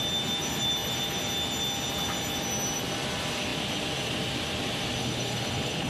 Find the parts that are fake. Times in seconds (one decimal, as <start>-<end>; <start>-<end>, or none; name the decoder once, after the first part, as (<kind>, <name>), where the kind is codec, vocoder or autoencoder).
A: 5.0-5.9 (codec, HILCodec)